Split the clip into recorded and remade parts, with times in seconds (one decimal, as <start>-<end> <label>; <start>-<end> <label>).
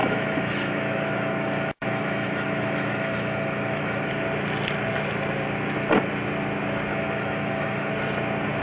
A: 0.0-4.1 remade; 4.1-6.9 recorded; 6.9-7.9 remade; 7.9-8.6 recorded